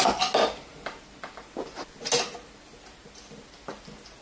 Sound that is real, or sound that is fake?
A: real